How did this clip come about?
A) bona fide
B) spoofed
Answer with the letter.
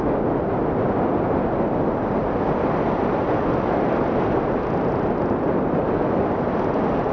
A